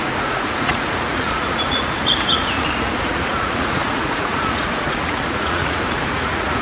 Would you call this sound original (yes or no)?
no